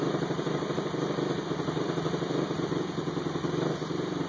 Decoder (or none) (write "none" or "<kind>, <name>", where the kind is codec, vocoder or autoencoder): vocoder, BigVGAN v2